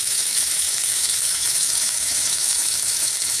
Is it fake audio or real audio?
fake